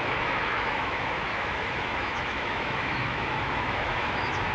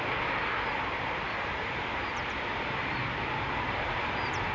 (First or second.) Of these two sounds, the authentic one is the second